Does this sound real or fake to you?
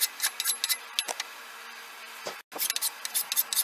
real